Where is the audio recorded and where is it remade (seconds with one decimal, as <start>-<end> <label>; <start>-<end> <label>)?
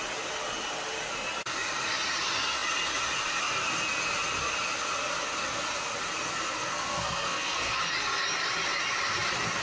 0.0-6.5 recorded; 6.5-7.7 remade; 7.7-9.6 recorded